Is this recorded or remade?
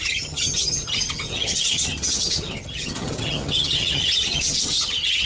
remade